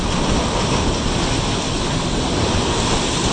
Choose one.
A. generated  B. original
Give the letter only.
B